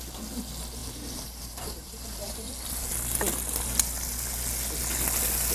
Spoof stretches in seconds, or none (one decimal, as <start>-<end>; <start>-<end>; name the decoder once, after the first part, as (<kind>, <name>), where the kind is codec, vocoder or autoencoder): 0.8-2.5 (vocoder, BigVGAN v2)